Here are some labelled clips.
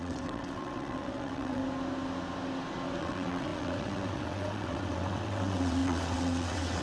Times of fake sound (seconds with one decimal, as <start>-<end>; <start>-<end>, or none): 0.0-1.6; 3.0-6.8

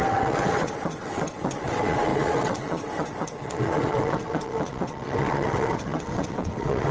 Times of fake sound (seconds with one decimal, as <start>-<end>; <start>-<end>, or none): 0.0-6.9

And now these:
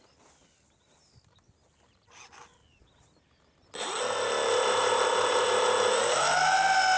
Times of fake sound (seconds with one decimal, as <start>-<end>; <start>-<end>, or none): none

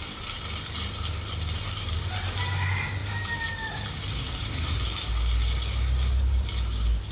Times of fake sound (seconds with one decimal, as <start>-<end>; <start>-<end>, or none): none

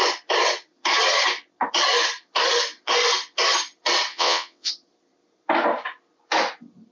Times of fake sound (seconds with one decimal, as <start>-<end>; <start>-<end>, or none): 4.1-4.7

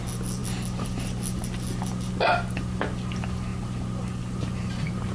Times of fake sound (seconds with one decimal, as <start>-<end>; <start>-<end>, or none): none

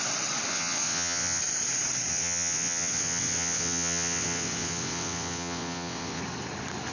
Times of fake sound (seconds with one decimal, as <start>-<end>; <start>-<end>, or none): 0.5-1.4; 2.1-6.2

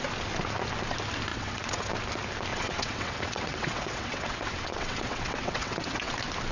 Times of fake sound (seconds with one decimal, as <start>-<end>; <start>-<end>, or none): 1.3-1.9; 2.5-6.1